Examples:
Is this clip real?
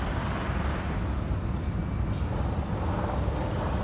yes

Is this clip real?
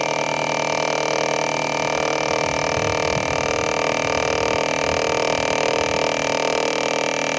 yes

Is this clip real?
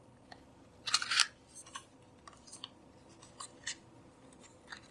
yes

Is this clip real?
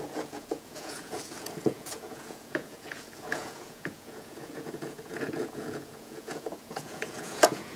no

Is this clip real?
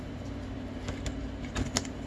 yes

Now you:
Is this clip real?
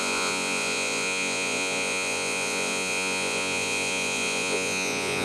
no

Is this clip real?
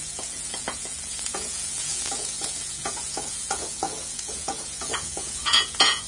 no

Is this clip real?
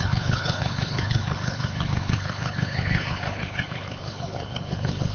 no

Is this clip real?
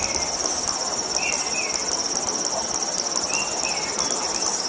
yes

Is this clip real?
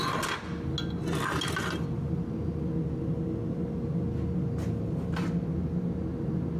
yes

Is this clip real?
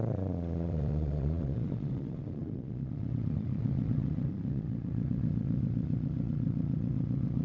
no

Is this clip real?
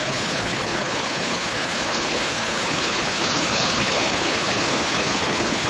no